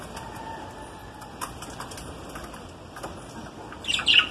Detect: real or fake real